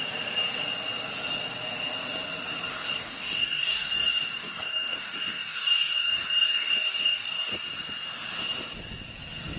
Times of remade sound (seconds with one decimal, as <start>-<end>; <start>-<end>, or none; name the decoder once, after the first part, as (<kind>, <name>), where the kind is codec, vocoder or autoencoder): 2.7-7.5 (codec, DAC)